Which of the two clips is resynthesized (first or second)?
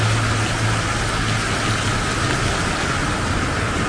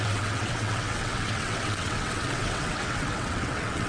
second